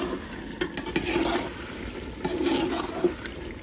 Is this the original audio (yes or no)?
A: yes